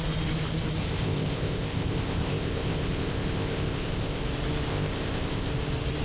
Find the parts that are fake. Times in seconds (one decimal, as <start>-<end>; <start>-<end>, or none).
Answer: 0.8-4.2; 4.7-5.5